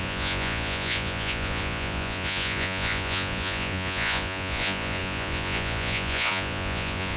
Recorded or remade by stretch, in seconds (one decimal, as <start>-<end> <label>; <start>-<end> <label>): 0.0-7.2 remade